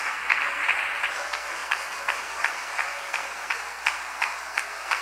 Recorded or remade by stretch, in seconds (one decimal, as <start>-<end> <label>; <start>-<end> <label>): 0.0-0.6 remade; 0.6-1.1 recorded; 1.1-5.0 remade